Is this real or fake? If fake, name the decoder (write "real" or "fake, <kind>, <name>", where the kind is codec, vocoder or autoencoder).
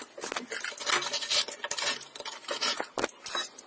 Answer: real